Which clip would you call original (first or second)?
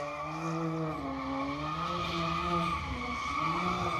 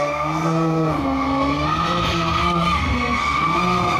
first